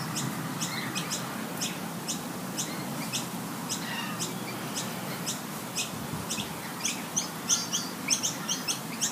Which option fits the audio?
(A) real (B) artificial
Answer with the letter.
A